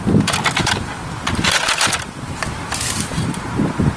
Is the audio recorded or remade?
recorded